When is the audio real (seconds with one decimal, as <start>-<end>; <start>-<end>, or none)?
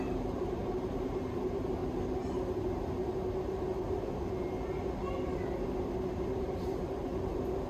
1.8-6.4; 7.1-7.7